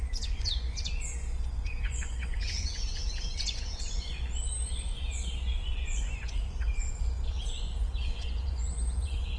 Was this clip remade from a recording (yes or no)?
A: yes